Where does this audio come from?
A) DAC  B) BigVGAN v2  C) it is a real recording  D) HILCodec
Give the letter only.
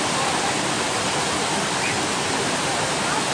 B